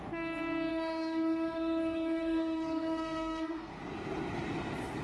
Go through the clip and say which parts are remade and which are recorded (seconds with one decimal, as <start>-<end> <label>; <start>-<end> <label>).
0.0-0.7 recorded; 0.7-3.7 remade; 3.7-5.0 recorded